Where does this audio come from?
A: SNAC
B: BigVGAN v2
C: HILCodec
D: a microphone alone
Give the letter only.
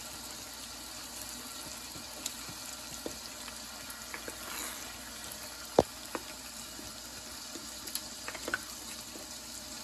D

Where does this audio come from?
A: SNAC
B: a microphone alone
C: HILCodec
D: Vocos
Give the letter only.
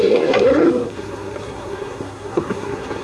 A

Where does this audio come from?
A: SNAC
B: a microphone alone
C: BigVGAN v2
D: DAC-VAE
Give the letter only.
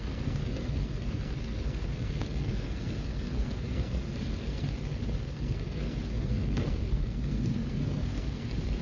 A